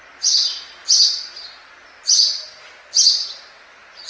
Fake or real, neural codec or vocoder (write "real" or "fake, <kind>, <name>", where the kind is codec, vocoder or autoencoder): real